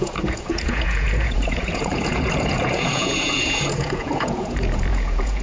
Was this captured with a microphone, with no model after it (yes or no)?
no